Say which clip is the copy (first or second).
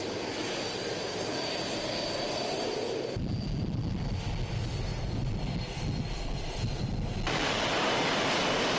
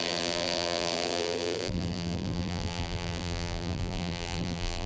second